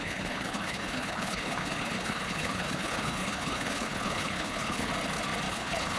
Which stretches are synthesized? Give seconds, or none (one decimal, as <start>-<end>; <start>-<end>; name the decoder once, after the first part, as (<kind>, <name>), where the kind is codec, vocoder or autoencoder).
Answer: 0.0-4.9 (codec, HILCodec); 5.5-6.0